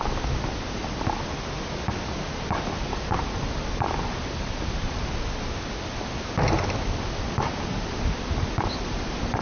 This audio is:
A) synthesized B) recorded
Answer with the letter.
B